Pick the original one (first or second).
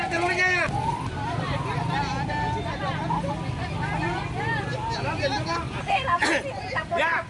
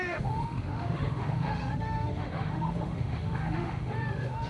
first